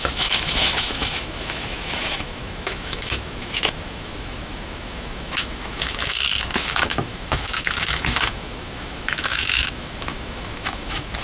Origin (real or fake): fake